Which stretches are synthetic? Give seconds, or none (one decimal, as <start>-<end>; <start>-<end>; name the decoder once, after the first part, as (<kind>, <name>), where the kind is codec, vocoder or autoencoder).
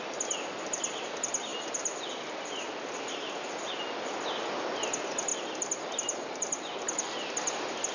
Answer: 1.5-2.6 (vocoder, BigVGAN v2)